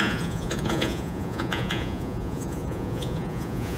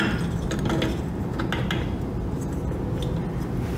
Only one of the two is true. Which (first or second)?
second